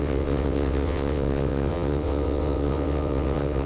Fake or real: fake